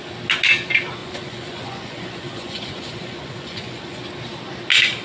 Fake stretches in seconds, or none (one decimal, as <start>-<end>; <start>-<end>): 1.0-4.0